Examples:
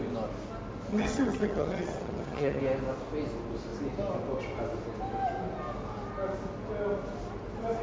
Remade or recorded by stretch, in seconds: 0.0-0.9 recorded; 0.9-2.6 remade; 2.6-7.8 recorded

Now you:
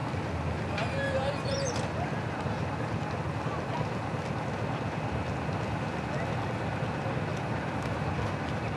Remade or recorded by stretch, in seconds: 0.0-8.8 recorded

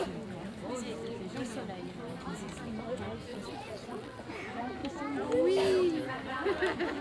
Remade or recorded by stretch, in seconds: 0.0-3.3 recorded; 3.3-4.2 remade; 4.2-7.0 recorded

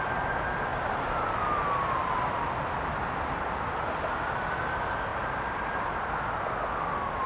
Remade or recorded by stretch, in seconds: 0.0-0.7 recorded; 0.7-1.4 remade; 1.4-5.1 recorded; 5.1-5.9 remade; 5.9-7.3 recorded

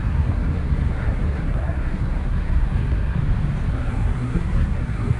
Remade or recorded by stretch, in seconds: 0.0-3.2 remade; 3.2-3.7 recorded; 3.7-5.2 remade

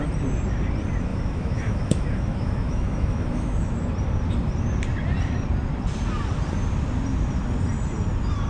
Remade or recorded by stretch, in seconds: 0.0-1.1 recorded; 1.1-3.9 remade; 3.9-8.5 recorded

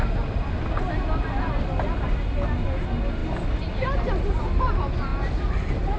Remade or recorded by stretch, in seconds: 0.0-6.0 recorded